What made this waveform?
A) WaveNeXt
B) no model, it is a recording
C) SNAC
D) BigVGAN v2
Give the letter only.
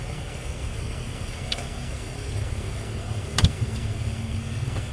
C